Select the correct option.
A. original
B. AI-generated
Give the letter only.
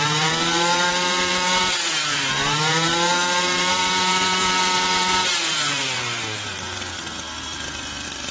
B